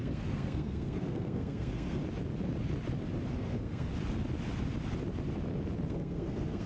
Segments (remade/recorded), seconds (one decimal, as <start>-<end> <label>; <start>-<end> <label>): 0.0-2.0 remade; 2.0-3.3 recorded; 3.3-3.9 remade; 3.9-5.9 recorded; 5.9-6.7 remade